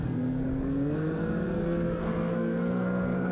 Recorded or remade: remade